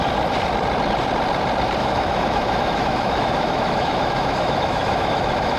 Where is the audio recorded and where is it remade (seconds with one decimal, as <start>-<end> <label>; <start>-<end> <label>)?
0.0-1.8 recorded; 1.8-5.6 remade